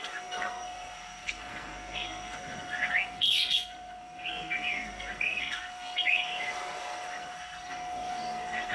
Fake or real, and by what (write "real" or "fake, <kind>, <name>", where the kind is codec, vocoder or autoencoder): fake, codec, SNAC